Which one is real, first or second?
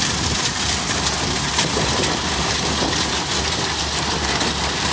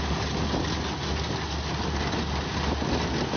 second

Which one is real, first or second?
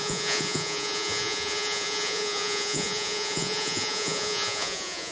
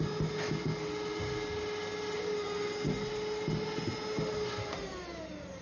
second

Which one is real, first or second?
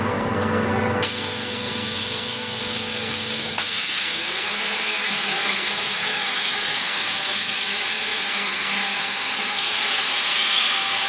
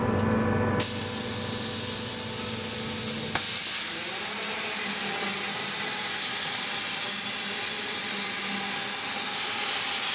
second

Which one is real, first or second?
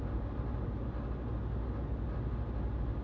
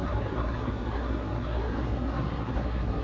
first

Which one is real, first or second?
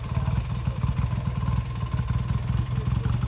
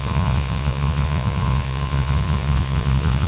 first